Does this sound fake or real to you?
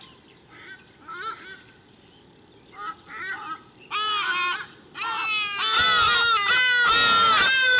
real